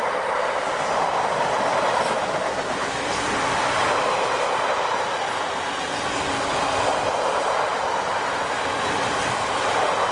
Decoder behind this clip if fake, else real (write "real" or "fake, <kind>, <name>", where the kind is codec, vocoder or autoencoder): real